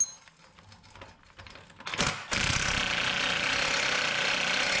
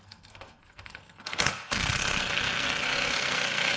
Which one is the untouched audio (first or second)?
first